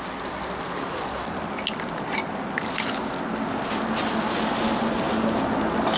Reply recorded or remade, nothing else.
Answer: recorded